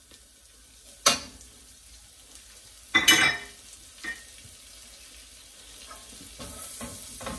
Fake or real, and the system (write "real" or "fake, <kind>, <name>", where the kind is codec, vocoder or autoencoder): real